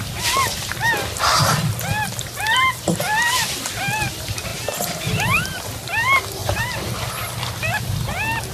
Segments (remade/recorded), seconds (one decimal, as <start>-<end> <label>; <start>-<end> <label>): 0.0-6.4 recorded; 6.4-7.1 remade; 7.1-8.5 recorded